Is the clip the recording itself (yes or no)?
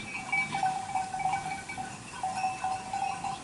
yes